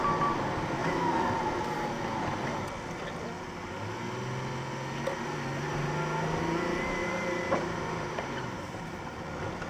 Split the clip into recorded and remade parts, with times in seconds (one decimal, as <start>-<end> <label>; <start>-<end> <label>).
0.0-7.0 recorded; 7.0-9.0 remade; 9.0-9.7 recorded